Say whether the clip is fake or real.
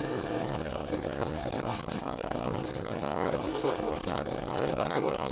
fake